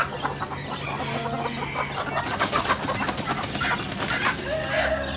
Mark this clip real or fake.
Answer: real